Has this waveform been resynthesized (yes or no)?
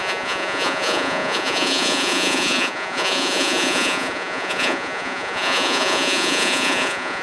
yes